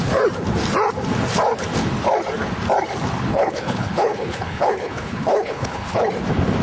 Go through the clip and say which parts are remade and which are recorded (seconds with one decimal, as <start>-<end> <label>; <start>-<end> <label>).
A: 0.0-3.3 recorded; 3.3-6.1 remade; 6.1-6.6 recorded